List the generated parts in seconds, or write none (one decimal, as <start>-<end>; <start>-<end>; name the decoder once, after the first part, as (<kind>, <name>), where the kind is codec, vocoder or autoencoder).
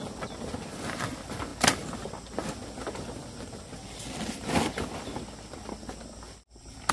none